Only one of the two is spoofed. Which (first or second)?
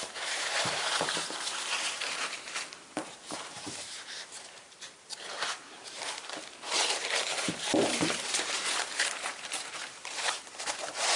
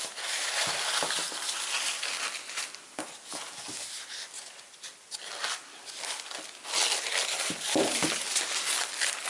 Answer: first